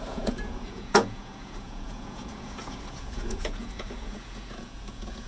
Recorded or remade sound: remade